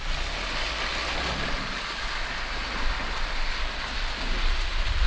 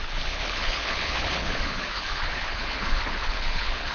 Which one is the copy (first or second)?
second